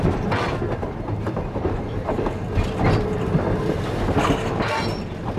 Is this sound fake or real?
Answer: real